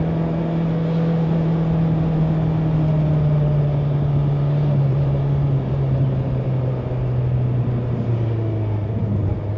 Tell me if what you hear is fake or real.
real